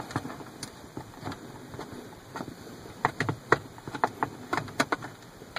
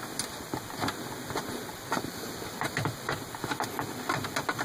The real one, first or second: second